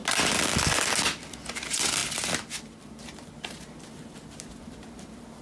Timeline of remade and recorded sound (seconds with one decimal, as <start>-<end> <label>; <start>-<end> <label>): 0.0-5.4 recorded